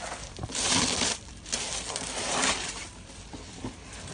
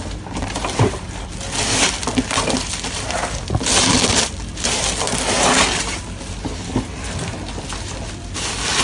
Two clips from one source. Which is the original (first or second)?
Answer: second